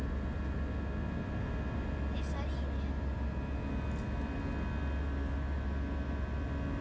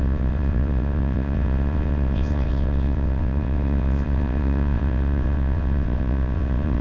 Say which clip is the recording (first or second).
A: first